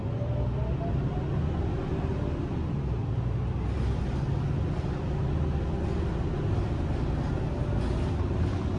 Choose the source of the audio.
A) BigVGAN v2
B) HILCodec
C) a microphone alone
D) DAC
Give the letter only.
C